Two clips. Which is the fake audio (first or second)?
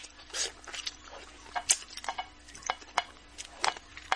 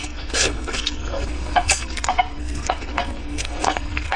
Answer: second